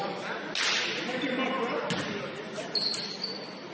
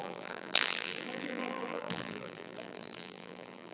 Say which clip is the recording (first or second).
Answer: first